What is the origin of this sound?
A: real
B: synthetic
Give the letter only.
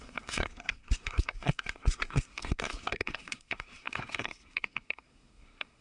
B